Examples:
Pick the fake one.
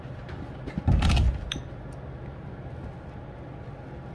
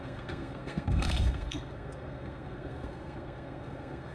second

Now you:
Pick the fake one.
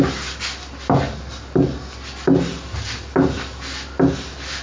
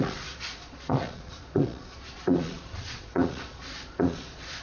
second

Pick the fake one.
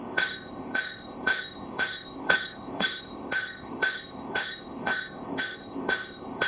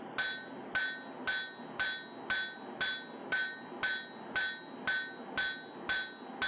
first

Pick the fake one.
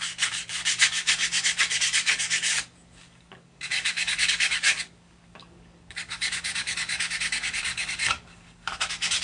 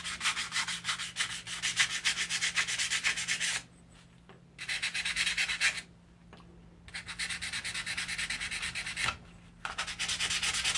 first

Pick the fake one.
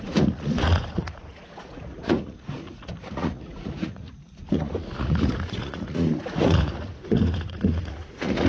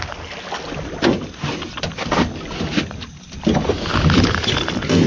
first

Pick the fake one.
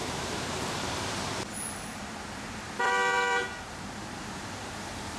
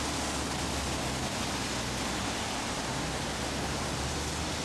first